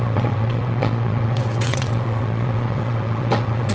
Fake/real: fake